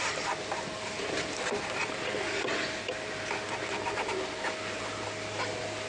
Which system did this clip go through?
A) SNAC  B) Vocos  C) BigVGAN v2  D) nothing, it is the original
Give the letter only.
D